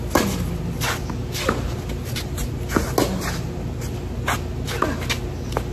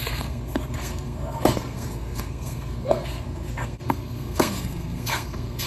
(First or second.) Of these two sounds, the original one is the first